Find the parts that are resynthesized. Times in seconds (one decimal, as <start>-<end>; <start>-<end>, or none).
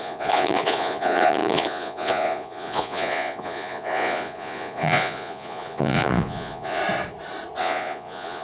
0.0-6.8; 7.6-8.4